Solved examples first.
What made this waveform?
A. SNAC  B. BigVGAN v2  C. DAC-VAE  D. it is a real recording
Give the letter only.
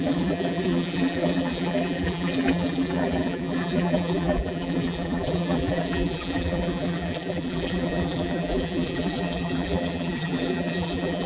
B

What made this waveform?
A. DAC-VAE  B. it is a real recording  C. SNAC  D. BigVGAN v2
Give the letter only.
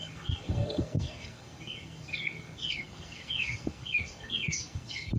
C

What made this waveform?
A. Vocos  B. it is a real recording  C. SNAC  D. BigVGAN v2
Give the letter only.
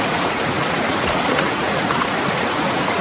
A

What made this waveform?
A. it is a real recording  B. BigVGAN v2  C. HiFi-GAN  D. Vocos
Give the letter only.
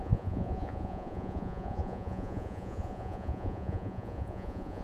D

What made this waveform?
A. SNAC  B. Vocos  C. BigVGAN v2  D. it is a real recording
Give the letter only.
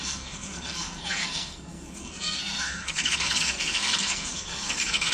A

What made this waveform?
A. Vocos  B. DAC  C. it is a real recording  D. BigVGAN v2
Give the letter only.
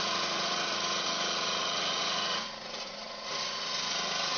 A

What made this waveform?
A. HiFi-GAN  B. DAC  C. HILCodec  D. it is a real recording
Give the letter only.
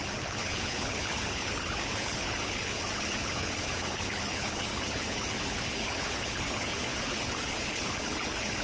C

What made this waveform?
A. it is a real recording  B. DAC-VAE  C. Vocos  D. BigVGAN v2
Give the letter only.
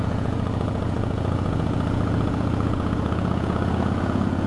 C